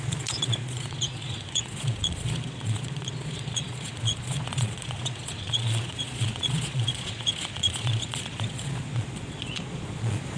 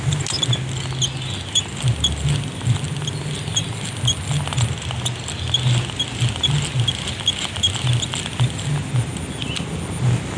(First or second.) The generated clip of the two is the first